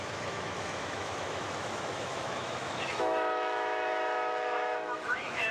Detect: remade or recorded remade